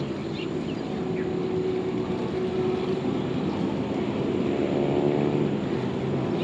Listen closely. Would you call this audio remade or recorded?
recorded